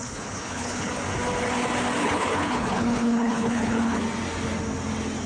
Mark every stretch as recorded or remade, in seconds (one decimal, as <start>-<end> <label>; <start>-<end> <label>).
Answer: 0.0-0.9 remade; 0.9-2.0 recorded; 2.0-4.0 remade; 4.0-5.3 recorded